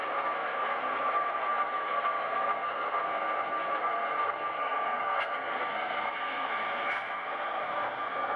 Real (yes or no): no